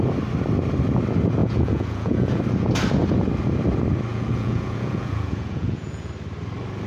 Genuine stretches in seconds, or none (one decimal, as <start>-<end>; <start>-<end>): 0.0-1.4; 2.4-4.1; 6.1-6.9